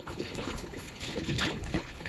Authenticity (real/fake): fake